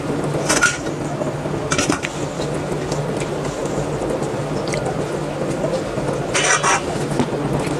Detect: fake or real real